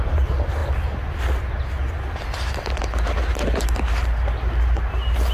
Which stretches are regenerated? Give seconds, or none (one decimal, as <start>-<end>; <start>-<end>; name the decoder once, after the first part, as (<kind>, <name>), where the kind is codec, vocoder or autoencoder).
none